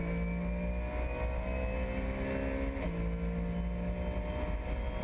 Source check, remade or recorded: recorded